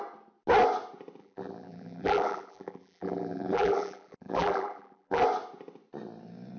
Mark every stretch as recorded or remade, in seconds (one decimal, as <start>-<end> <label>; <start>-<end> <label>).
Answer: 0.0-1.2 recorded; 1.2-5.2 remade; 5.2-6.6 recorded